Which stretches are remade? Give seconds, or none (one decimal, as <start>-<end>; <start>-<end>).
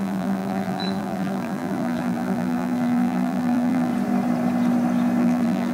0.0-3.9; 5.2-5.7